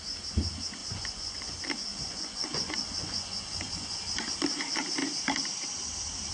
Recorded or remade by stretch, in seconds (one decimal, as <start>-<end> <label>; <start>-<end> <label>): 0.0-0.8 recorded; 0.8-1.5 remade; 1.5-1.9 recorded; 1.9-4.0 remade; 4.0-6.3 recorded